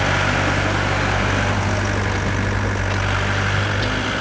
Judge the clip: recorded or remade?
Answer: recorded